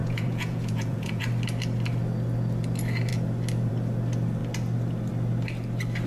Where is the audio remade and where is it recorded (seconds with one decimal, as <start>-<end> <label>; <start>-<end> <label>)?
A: 0.0-1.2 remade; 1.2-6.1 recorded